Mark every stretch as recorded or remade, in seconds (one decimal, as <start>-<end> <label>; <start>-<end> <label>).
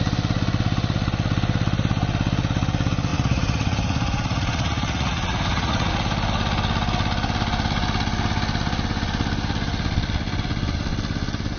0.0-3.1 recorded; 3.1-5.9 remade; 5.9-11.6 recorded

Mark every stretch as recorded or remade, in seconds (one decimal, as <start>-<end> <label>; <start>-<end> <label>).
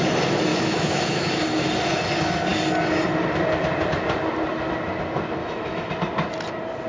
0.0-0.5 recorded; 0.5-1.3 remade; 1.3-5.4 recorded; 5.4-5.9 remade; 5.9-6.9 recorded